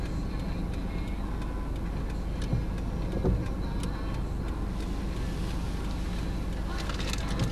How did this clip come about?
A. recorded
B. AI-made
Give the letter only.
A